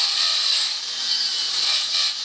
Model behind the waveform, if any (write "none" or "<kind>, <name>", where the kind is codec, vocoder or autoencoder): none